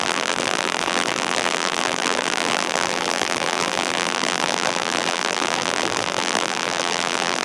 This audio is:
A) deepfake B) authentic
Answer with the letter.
A